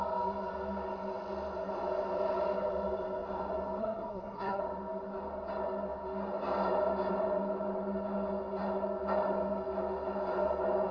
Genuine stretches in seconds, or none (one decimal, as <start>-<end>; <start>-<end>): 0.0-3.8; 4.6-10.9